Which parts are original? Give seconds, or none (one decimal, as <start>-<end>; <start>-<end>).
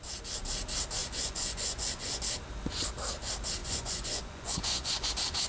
0.0-1.0; 2.2-3.6; 5.1-5.5